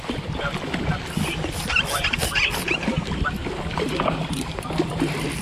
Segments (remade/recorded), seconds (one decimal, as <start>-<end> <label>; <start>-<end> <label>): 0.0-0.9 remade; 0.9-3.0 recorded; 3.0-5.4 remade